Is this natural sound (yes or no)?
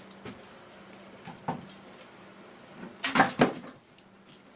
yes